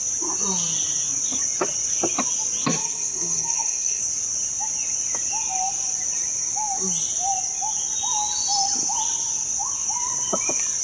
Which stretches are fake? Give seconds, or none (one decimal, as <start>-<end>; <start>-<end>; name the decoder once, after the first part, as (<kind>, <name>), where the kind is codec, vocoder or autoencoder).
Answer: 2.8-4.0 (codec, SNAC)